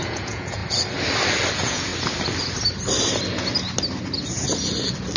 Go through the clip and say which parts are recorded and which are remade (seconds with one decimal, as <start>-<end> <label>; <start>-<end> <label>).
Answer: 0.0-0.6 remade; 0.6-1.5 recorded; 1.5-1.9 remade; 1.9-5.2 recorded